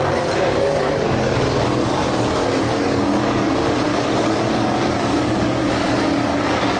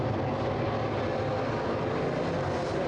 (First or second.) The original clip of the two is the second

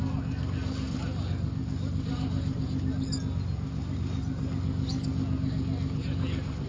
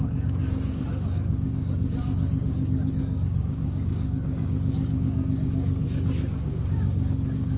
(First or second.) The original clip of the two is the first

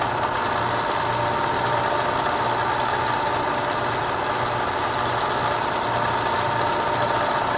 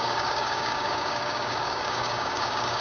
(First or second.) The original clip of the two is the first